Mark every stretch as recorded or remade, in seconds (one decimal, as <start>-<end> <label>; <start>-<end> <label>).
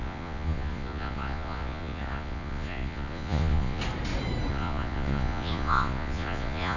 0.0-3.8 remade; 3.8-4.5 recorded; 4.5-6.8 remade